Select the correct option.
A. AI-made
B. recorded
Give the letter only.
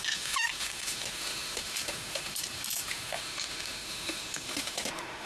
A